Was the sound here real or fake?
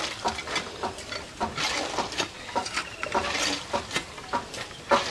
real